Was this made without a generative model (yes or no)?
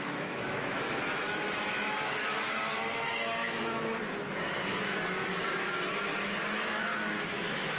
no